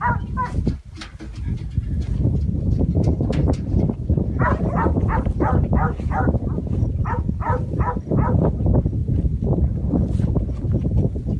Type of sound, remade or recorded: recorded